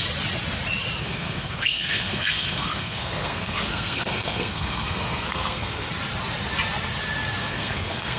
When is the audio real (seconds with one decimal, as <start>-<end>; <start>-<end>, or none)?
0.0-1.0; 5.9-7.4